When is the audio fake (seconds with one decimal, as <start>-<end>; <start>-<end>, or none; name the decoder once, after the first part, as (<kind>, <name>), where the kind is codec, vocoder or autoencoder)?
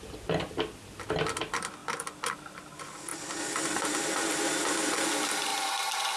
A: none